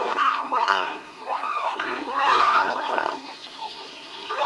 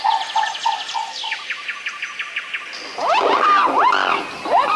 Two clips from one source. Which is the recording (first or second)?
second